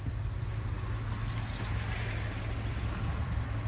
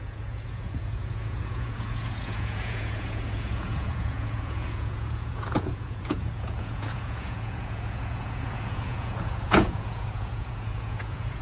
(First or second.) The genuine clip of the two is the first